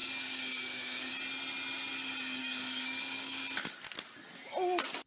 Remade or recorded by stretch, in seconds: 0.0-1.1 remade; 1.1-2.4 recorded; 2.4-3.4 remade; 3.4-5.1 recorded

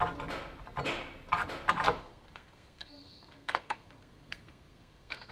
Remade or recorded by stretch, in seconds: 0.0-2.0 recorded; 2.0-5.3 remade